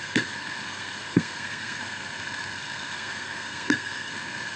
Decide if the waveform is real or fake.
fake